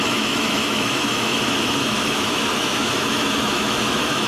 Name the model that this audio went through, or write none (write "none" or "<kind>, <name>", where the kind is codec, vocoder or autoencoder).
autoencoder, DAC-VAE